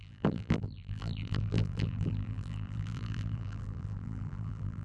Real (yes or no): no